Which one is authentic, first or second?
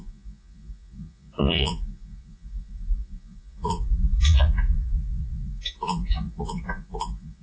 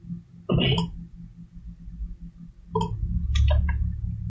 second